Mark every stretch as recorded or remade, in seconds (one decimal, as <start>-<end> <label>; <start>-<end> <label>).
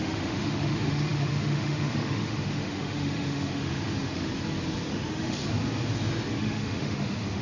0.0-4.3 remade; 4.3-4.9 recorded; 4.9-5.4 remade; 5.4-6.4 recorded; 6.4-7.4 remade